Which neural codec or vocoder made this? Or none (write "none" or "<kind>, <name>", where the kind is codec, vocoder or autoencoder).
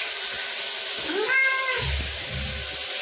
none